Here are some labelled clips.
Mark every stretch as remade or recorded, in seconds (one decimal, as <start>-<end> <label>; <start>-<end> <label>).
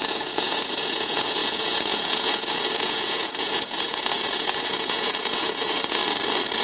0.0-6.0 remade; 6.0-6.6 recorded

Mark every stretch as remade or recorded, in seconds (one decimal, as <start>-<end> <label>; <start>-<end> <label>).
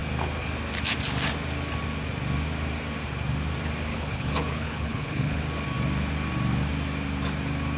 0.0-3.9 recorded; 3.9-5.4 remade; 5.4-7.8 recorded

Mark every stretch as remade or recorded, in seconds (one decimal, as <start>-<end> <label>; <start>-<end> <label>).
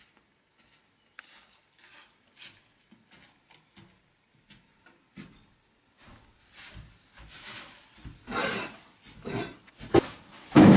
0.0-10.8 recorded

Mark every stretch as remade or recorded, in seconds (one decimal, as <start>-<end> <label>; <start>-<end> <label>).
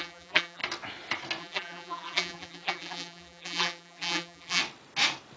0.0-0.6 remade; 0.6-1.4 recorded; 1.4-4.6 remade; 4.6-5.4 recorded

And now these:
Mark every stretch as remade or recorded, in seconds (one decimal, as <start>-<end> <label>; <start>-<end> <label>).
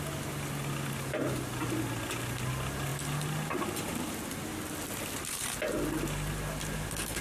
0.0-7.2 recorded